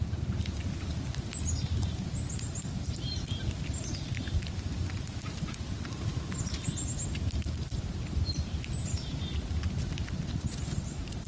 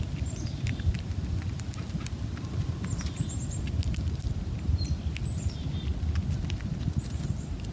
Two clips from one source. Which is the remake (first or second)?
second